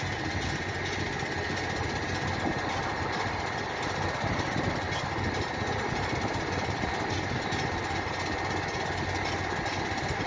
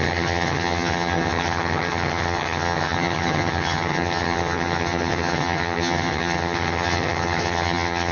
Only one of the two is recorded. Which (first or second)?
first